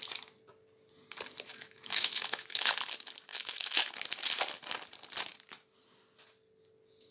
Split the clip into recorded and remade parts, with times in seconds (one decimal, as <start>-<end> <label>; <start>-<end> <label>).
0.0-1.5 recorded; 1.5-2.7 remade; 2.7-3.3 recorded; 3.3-3.9 remade; 3.9-7.1 recorded